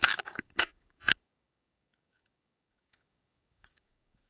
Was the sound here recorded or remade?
remade